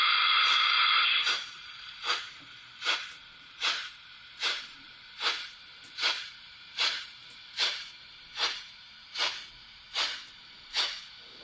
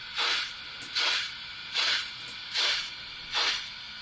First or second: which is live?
second